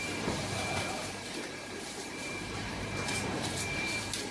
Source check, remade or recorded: remade